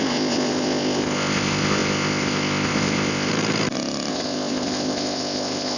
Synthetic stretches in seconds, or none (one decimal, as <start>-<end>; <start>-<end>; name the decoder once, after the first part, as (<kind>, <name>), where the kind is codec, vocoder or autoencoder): 0.0-3.3 (codec, ZipCodec); 4.1-5.8